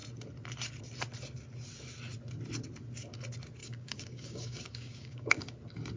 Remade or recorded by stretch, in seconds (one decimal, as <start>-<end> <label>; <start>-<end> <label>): 0.0-3.6 recorded; 3.6-5.4 remade; 5.4-6.0 recorded

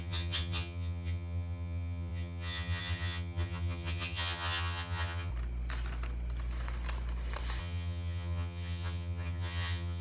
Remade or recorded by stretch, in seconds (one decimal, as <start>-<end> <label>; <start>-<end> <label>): 0.0-5.3 remade; 5.3-7.6 recorded; 7.6-10.0 remade

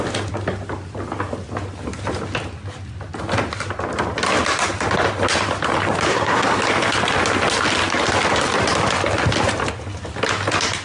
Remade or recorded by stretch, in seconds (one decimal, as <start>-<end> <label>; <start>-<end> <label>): 0.0-6.1 recorded; 6.1-6.6 remade; 6.6-10.8 recorded

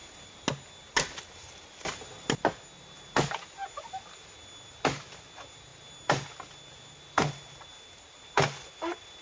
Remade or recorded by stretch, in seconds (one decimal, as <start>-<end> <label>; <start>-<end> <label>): 0.0-9.2 recorded

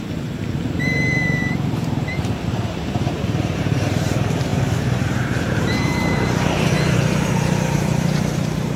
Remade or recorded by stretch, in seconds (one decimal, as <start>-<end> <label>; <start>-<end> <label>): 0.0-8.8 remade